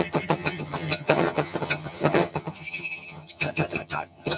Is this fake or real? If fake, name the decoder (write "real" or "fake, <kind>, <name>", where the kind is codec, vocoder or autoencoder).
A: fake, vocoder, HiFi-GAN